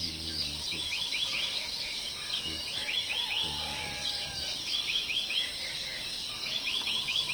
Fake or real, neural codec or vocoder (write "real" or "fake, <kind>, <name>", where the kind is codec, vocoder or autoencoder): fake, codec, DAC